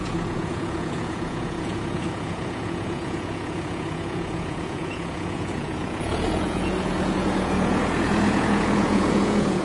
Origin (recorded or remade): remade